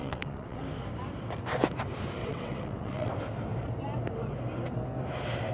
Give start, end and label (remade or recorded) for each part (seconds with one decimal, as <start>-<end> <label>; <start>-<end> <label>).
0.0-0.6 remade; 0.6-2.2 recorded; 2.2-3.1 remade; 3.1-5.5 recorded